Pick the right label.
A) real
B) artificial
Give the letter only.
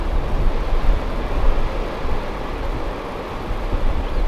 A